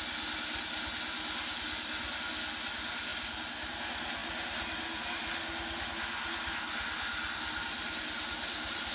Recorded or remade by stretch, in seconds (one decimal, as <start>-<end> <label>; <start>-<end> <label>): 0.0-8.9 recorded